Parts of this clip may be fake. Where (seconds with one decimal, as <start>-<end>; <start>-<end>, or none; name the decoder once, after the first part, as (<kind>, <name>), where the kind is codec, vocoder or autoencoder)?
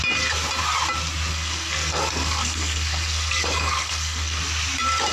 1.3-4.4 (codec, SNAC)